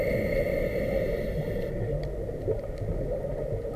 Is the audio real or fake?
real